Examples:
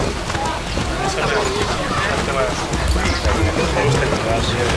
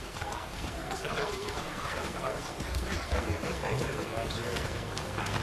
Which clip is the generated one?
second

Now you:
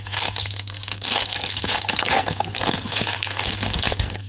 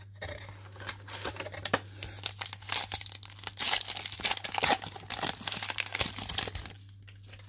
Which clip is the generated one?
first